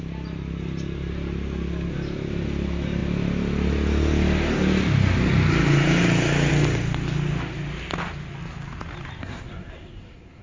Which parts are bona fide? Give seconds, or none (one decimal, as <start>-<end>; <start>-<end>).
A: 0.0-9.2